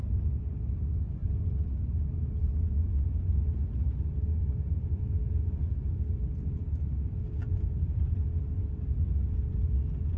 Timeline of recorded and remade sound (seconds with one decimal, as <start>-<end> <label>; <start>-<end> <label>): 0.0-10.2 recorded